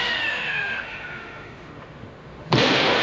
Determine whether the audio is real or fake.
fake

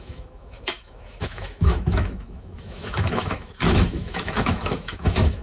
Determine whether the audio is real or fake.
fake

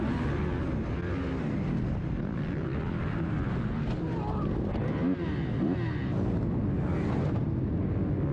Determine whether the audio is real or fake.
real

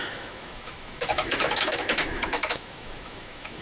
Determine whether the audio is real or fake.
fake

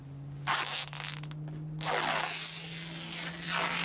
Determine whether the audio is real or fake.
real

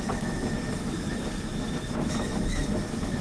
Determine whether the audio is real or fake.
fake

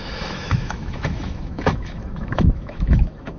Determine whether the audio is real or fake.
fake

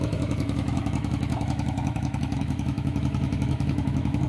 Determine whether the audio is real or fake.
fake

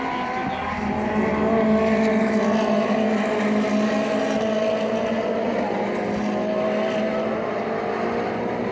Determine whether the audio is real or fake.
real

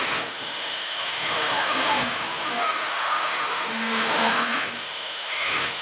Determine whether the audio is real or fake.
fake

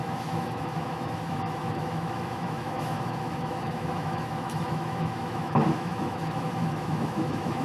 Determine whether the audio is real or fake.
fake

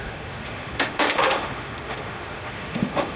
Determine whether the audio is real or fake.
fake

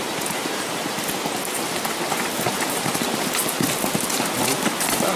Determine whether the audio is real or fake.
real